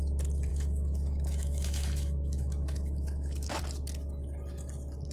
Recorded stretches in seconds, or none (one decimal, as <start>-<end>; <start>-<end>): 0.0-0.5; 3.6-5.1